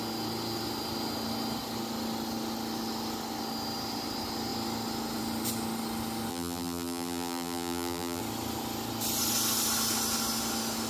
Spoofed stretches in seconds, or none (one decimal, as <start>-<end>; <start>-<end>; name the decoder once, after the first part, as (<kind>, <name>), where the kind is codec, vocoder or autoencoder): 6.3-8.2 (vocoder, BigVGAN v2)